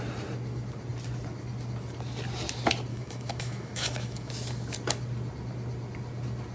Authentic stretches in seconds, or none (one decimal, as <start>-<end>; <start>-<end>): 0.0-2.9; 4.3-6.5